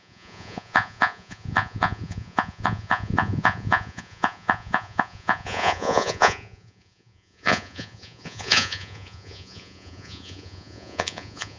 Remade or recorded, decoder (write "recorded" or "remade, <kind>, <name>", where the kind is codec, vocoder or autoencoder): remade, vocoder, Vocos